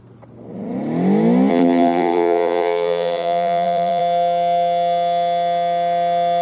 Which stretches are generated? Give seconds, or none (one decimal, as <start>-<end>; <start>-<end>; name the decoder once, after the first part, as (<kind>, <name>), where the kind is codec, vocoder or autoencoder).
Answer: 1.5-4.0 (vocoder, BigVGAN v2)